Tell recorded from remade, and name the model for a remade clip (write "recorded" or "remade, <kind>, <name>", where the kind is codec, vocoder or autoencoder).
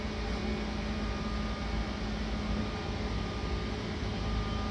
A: recorded